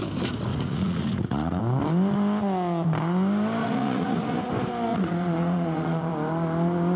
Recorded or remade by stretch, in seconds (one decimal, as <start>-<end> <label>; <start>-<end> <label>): 0.0-0.5 recorded; 0.5-1.6 remade; 1.6-3.6 recorded; 3.6-4.4 remade; 4.4-4.9 recorded; 4.9-6.1 remade; 6.1-7.0 recorded